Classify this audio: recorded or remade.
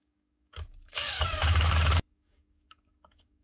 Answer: remade